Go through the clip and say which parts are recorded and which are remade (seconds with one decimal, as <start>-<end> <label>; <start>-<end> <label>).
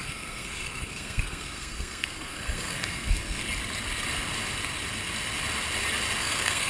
0.0-3.4 remade; 3.4-6.2 recorded; 6.2-6.7 remade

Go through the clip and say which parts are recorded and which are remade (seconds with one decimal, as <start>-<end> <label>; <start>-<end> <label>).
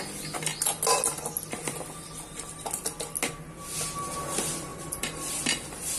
0.0-4.7 recorded; 4.7-6.0 remade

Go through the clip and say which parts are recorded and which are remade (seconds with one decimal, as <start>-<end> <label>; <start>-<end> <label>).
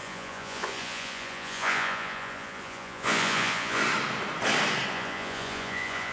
0.0-3.8 remade; 3.8-4.9 recorded; 4.9-6.1 remade